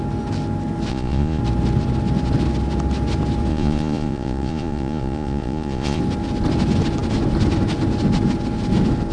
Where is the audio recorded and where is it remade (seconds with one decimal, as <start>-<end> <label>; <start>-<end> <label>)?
0.0-0.9 recorded; 0.9-1.4 remade; 1.4-3.5 recorded; 3.5-6.0 remade; 6.0-9.1 recorded